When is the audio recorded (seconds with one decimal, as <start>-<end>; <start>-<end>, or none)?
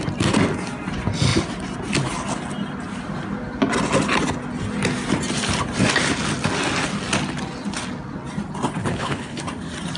0.0-8.8; 9.4-10.0